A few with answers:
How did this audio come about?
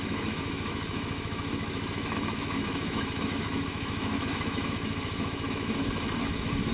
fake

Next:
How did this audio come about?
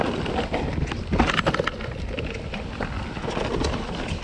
real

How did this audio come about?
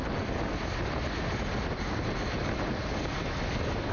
real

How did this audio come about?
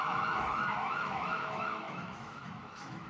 fake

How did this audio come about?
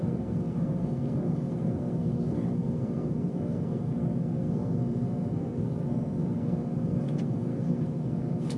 fake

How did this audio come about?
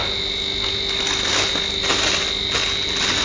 real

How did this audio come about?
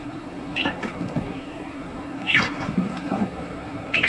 fake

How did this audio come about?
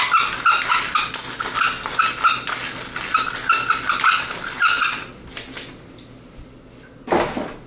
real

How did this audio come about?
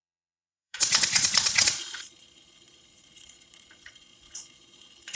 fake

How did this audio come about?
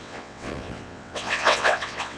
fake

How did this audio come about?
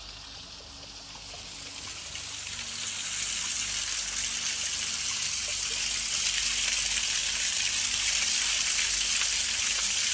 real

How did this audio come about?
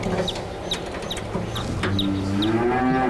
real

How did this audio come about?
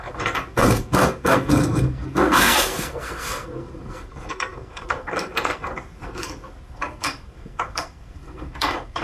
fake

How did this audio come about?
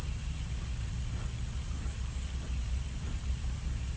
real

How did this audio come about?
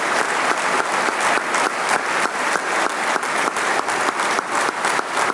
real